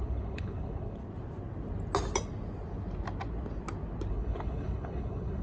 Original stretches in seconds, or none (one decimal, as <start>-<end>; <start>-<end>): 1.0-4.1